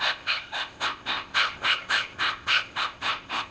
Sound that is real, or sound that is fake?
fake